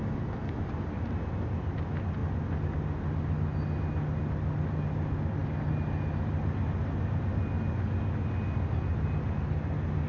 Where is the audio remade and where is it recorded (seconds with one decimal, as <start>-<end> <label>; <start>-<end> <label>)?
0.0-10.1 recorded